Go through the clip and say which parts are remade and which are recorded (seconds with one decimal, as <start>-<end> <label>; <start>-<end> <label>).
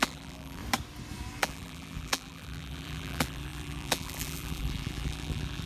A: 0.0-0.6 remade; 0.6-1.4 recorded; 1.4-5.7 remade